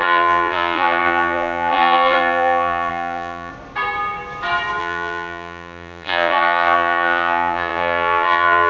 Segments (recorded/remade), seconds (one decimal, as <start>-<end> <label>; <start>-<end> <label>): 0.0-3.5 remade; 3.5-4.8 recorded; 4.8-8.7 remade